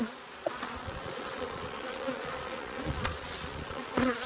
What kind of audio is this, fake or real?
fake